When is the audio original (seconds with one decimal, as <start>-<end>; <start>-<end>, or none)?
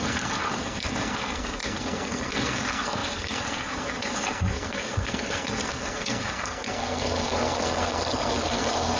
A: none